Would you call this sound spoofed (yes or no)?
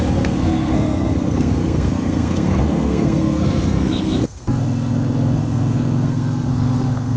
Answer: yes